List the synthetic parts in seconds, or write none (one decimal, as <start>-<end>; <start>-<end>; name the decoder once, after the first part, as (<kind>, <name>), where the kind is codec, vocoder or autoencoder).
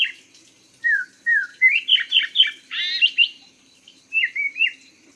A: 1.5-2.8 (vocoder, BigVGAN v2); 3.2-4.6